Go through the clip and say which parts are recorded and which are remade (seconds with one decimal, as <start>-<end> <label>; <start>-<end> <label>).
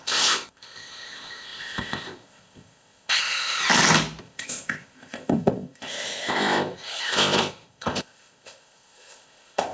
0.0-3.6 remade; 3.6-4.2 recorded; 4.2-9.7 remade